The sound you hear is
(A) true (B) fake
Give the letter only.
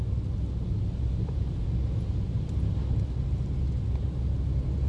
A